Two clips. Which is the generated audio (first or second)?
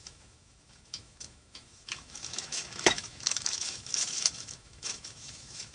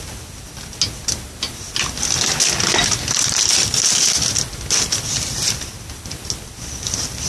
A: first